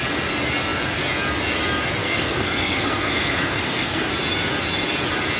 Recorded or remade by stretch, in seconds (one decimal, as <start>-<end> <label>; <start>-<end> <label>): 0.0-2.0 recorded; 2.0-4.0 remade; 4.0-5.4 recorded